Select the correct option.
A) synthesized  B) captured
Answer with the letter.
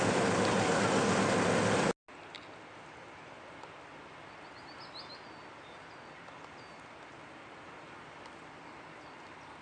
B